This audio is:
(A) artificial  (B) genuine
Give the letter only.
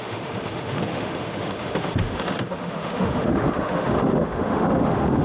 A